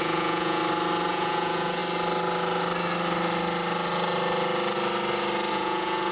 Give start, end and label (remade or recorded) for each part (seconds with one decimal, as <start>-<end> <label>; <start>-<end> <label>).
0.0-0.6 remade; 0.6-1.1 recorded; 1.1-1.8 remade; 1.8-5.5 recorded; 5.5-6.1 remade